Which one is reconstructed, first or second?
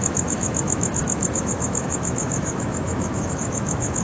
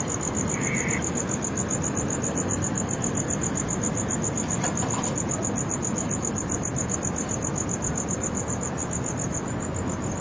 first